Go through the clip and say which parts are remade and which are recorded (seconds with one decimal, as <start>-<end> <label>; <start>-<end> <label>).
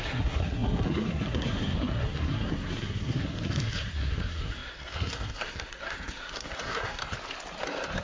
0.0-7.0 remade; 7.0-8.0 recorded